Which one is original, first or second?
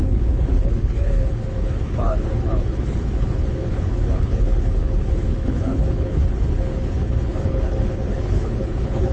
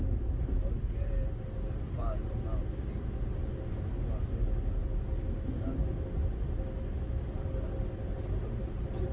second